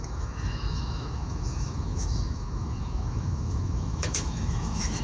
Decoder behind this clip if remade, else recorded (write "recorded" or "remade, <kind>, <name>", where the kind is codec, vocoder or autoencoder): remade, autoencoder, DAC-VAE